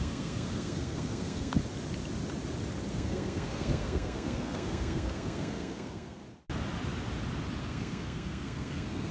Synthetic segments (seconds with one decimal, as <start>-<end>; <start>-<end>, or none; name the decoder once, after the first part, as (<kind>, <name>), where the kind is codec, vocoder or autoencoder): 0.0-1.6 (codec, SNAC); 2.9-6.2; 7.6-9.1